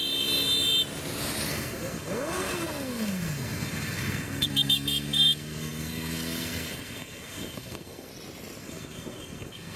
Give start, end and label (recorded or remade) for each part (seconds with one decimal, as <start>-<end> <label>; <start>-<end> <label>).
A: 0.0-1.5 recorded; 1.5-8.1 remade; 8.1-8.6 recorded; 8.6-9.8 remade